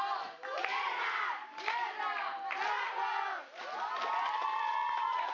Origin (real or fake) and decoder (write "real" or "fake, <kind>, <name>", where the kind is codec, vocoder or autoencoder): real